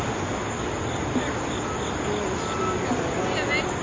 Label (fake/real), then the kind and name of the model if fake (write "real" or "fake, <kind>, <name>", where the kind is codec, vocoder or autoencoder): real